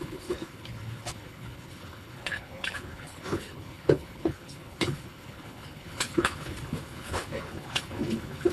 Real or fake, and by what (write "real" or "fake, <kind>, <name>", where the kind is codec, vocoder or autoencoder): fake, codec, HILCodec